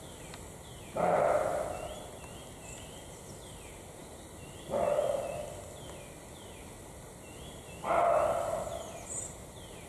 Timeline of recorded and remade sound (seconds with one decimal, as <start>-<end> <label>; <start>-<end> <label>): 0.0-9.9 recorded